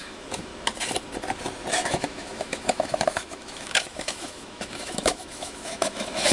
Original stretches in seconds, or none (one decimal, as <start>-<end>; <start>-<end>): 0.5-1.7